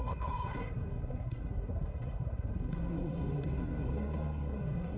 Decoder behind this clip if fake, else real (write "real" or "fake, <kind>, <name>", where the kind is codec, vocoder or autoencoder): fake, codec, SNAC